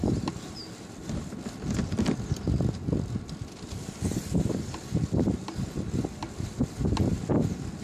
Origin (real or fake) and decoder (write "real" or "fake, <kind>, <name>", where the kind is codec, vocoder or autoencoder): real